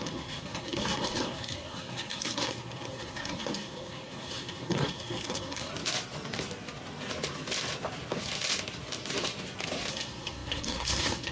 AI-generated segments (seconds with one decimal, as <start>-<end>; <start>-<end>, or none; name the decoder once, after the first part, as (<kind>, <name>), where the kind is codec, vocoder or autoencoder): 0.0-5.7 (codec, SNAC); 9.9-11.3